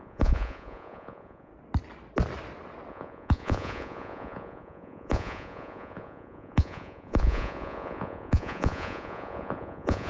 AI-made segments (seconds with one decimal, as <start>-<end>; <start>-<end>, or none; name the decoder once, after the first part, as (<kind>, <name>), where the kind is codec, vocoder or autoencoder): 0.0-1.5 (vocoder, Vocos); 2.9-10.1